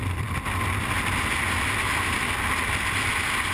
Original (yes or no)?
yes